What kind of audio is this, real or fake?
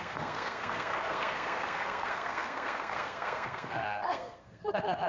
fake